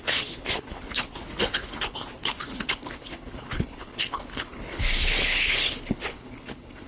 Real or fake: fake